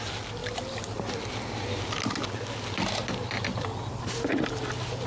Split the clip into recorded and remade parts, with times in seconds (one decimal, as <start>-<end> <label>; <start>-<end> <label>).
0.0-3.5 recorded; 3.5-4.0 remade; 4.0-5.1 recorded